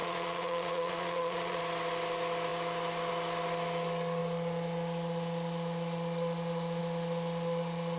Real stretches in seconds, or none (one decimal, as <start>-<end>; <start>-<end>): 1.6-8.0